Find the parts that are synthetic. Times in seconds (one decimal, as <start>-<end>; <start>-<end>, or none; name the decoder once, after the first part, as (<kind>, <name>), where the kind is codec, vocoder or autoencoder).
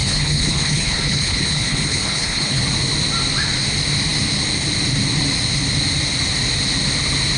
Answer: 0.0-2.6 (codec, HILCodec)